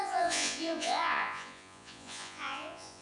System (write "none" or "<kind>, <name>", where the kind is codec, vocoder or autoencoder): vocoder, Vocos